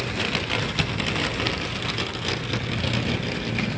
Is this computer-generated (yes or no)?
no